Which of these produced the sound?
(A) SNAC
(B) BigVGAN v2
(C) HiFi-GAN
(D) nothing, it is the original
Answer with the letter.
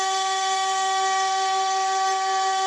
A